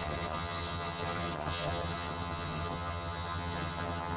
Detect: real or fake fake